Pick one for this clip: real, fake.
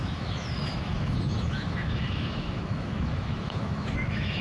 fake